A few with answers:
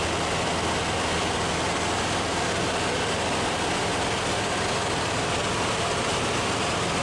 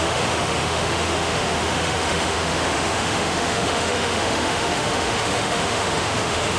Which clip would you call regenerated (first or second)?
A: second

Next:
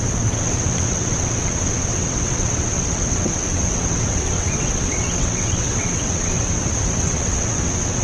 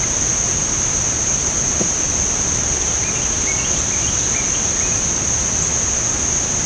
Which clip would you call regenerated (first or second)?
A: first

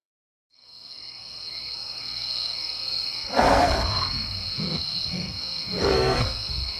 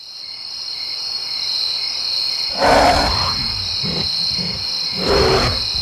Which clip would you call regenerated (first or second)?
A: first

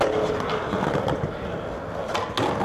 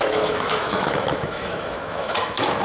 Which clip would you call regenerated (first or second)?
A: second